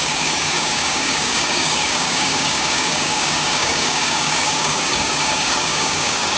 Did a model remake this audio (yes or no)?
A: yes